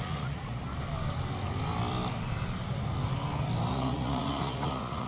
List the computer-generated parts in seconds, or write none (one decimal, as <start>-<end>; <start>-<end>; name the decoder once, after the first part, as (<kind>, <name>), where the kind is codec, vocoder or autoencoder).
0.0-0.6 (vocoder, Vocos); 3.7-5.1